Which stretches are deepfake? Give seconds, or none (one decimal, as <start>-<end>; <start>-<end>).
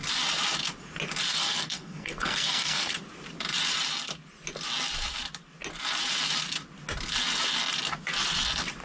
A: 1.3-3.0